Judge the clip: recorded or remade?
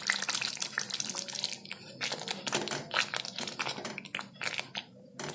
recorded